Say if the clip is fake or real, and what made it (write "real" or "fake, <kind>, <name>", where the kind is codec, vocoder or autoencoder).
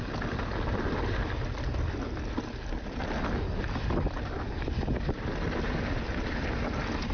real